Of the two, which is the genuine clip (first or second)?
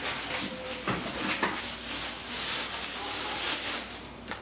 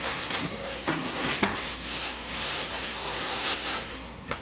first